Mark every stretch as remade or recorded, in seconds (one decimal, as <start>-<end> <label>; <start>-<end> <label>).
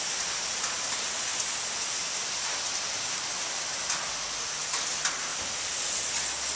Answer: 0.0-6.6 recorded